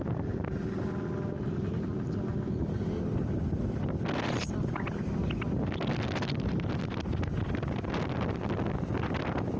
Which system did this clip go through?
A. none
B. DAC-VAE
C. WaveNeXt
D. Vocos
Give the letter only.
A